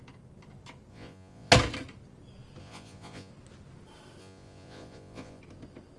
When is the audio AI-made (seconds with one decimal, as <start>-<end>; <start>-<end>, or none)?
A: 0.9-1.5; 2.6-3.3; 4.2-5.4